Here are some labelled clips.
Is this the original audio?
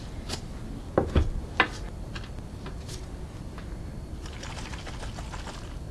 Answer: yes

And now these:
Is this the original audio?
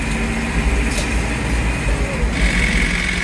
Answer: yes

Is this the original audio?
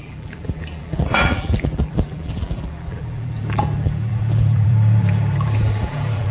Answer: no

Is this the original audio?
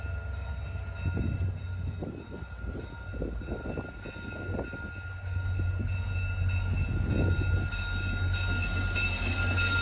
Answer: yes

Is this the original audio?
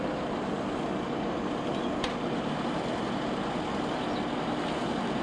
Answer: yes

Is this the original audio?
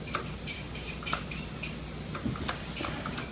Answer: yes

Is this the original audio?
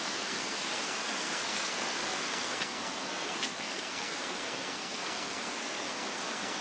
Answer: no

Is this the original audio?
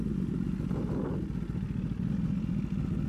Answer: yes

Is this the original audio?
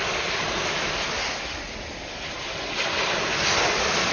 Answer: yes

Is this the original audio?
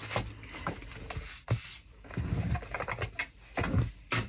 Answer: yes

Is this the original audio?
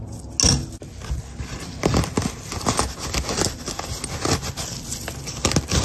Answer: yes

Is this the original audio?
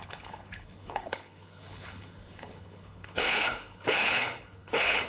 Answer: no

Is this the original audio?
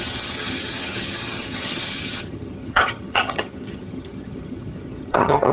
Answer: no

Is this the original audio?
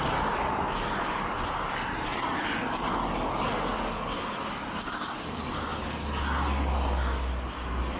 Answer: yes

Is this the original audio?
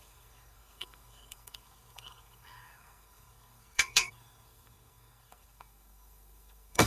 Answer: no